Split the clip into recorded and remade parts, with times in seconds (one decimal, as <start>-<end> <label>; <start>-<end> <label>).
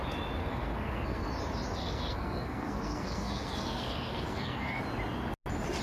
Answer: 0.0-0.4 recorded; 0.4-1.3 remade; 1.3-1.8 recorded; 1.8-4.8 remade; 4.8-5.8 recorded